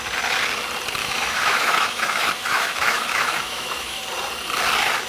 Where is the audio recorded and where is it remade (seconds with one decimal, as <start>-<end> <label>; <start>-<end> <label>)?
0.0-1.0 recorded; 1.0-4.0 remade; 4.0-5.1 recorded